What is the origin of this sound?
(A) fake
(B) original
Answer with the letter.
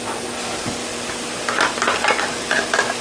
B